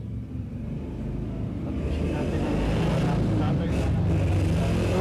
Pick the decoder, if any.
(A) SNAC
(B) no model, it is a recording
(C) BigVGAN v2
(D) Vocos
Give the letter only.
B